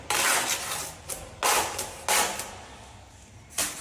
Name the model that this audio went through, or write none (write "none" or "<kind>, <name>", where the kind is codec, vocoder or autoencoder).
none